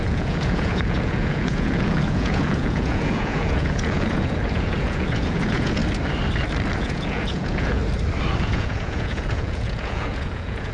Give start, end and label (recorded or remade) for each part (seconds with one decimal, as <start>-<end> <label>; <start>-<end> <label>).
0.0-5.8 remade; 5.8-6.8 recorded; 6.8-7.8 remade; 7.8-8.4 recorded; 8.4-10.7 remade

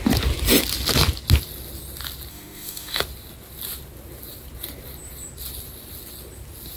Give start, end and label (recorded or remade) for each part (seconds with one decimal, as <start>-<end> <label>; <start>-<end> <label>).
0.0-2.3 recorded; 2.3-3.0 remade; 3.0-6.8 recorded

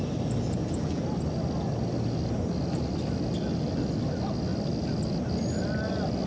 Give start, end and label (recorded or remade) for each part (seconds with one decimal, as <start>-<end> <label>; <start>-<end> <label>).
0.0-6.3 recorded